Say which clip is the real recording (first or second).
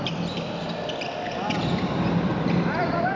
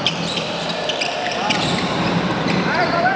first